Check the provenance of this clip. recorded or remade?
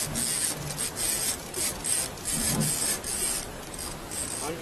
recorded